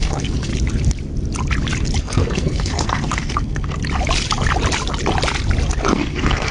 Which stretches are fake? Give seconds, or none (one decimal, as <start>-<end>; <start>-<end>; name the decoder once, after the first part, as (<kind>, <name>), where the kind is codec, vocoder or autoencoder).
0.0-0.5 (codec, SNAC); 2.0-3.8; 5.8-6.5